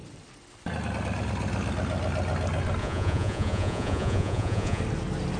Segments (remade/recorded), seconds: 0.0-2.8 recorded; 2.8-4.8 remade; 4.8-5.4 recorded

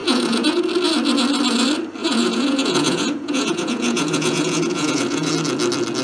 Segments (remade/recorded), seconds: 0.0-0.6 remade; 0.6-2.0 recorded; 2.0-5.3 remade; 5.3-6.0 recorded

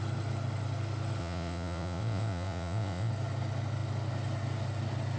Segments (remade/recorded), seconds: 0.0-1.2 recorded; 1.2-3.1 remade; 3.1-5.2 recorded